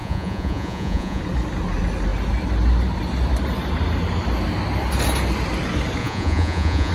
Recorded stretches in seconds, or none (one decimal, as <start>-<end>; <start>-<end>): 1.2-6.0